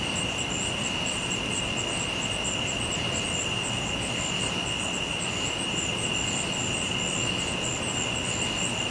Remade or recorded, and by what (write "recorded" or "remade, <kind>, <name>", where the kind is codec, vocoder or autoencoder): recorded